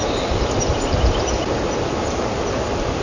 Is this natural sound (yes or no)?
yes